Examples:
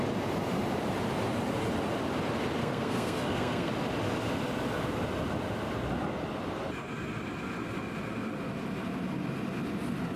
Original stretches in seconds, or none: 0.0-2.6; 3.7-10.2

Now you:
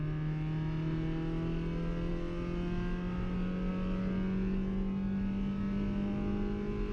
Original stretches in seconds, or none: 0.0-6.9

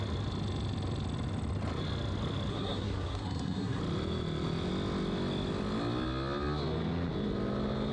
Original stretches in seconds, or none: 0.0-2.5; 3.8-7.9

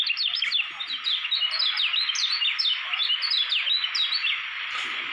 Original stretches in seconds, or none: 0.0-5.1

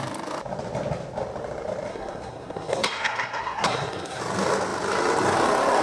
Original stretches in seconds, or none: 0.0-1.9; 4.2-5.8